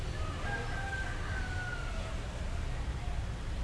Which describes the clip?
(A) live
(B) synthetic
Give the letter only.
A